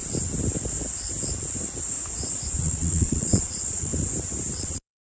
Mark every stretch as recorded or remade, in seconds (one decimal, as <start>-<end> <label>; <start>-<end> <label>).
0.0-2.6 recorded; 2.6-3.9 remade; 3.9-4.6 recorded; 4.6-5.1 remade